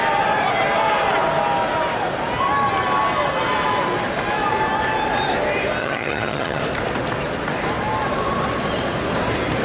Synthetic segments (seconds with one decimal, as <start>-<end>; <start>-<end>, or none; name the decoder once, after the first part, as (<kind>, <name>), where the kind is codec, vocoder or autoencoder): 5.8-6.6 (vocoder, HiFi-GAN)